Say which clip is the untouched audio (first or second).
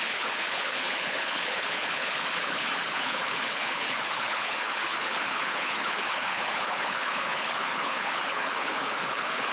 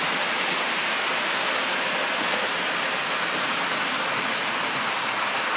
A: second